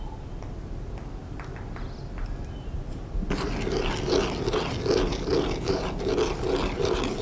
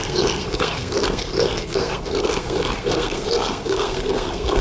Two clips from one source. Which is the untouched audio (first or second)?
first